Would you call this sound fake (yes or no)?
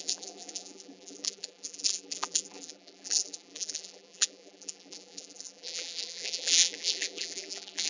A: yes